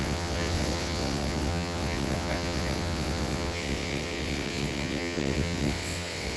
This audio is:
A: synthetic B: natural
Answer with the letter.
A